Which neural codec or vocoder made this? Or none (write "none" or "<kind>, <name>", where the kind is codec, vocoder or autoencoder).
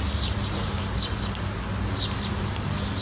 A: none